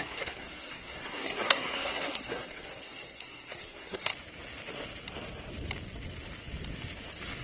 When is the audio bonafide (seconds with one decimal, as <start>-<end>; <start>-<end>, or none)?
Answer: 4.1-7.4